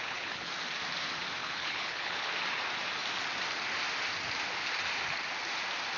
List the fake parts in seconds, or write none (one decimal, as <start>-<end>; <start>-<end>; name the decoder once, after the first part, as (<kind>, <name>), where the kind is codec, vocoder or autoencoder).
0.0-0.5 (codec, HILCodec); 1.4-2.3